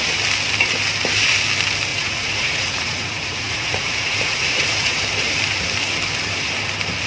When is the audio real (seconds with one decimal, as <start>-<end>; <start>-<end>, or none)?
0.0-1.9; 5.0-7.1